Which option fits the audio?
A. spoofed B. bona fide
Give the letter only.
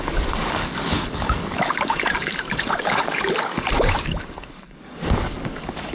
A